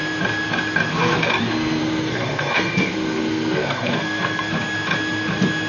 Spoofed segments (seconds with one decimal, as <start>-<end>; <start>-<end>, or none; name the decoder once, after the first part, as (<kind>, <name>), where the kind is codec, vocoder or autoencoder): 1.8-4.5 (codec, SNAC)